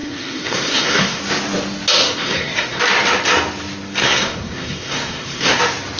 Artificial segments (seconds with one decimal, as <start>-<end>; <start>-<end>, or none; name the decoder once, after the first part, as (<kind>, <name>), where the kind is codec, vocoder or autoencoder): 0.0-1.2 (codec, SNAC); 2.0-2.8; 4.0-5.6